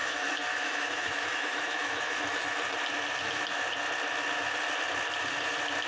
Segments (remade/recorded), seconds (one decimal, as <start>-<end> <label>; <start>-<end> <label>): 0.0-2.4 remade; 2.4-5.9 recorded